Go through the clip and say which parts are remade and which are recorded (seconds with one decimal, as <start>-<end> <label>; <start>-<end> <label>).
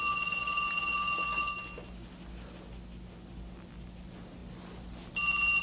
0.0-5.6 recorded